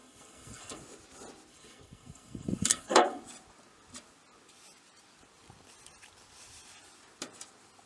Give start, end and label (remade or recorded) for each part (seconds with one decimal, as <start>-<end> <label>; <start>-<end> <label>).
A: 0.0-0.8 remade; 0.8-1.5 recorded; 1.5-3.2 remade; 3.2-7.9 recorded